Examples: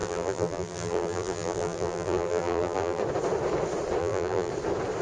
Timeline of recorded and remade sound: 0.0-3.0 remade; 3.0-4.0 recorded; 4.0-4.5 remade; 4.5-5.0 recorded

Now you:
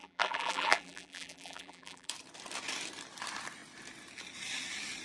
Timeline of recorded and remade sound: 0.0-2.1 remade; 2.1-5.0 recorded

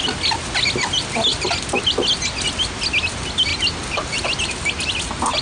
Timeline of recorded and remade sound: 0.0-5.4 recorded

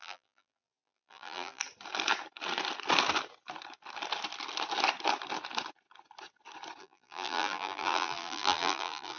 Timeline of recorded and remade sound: 0.0-1.6 remade; 1.6-6.8 recorded; 6.8-9.2 remade

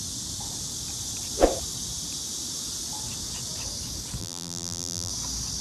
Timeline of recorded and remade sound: 0.0-4.2 recorded; 4.2-5.1 remade; 5.1-5.6 recorded

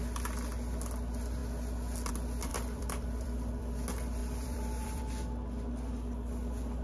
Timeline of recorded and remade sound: 0.0-2.5 recorded; 2.5-3.6 remade; 3.6-4.2 recorded; 4.2-5.0 remade; 5.0-6.8 recorded

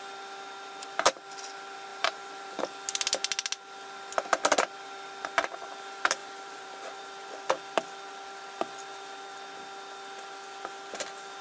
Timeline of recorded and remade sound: 0.0-1.9 recorded; 1.9-2.6 remade; 2.6-6.2 recorded; 6.2-7.0 remade; 7.0-11.4 recorded

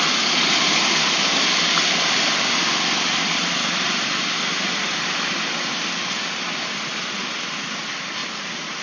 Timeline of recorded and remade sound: 0.0-2.6 remade; 2.6-4.2 recorded; 4.2-4.9 remade; 4.9-7.4 recorded; 7.4-8.2 remade; 8.2-8.8 recorded